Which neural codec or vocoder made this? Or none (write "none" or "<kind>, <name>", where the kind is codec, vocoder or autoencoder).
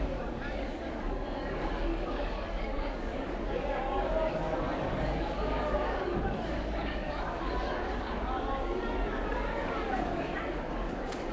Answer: codec, DAC